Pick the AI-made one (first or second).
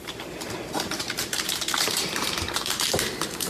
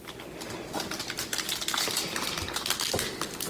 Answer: first